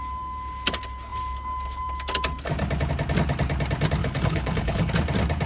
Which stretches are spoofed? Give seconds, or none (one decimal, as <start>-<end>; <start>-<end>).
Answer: 4.0-4.9